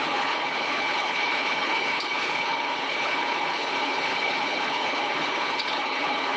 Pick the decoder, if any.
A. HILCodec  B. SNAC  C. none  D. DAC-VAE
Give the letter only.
A